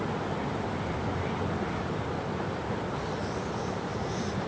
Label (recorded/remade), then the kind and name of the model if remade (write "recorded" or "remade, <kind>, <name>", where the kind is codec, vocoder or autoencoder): recorded